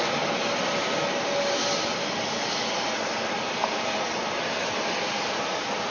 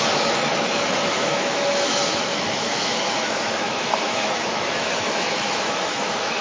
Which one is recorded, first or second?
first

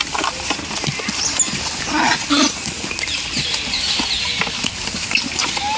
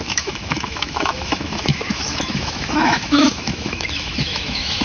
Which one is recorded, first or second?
first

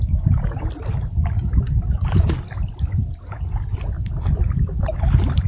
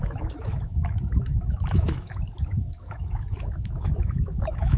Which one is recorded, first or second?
first